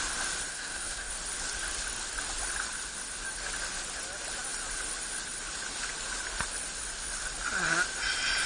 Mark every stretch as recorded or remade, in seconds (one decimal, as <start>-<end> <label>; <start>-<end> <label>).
0.0-0.5 recorded; 0.5-1.1 remade; 1.1-8.5 recorded